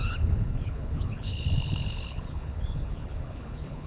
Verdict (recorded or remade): remade